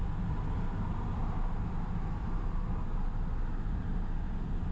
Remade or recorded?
recorded